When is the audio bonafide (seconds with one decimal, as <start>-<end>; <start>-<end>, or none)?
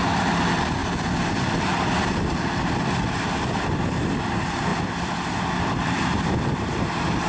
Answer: 0.8-1.3; 4.7-5.5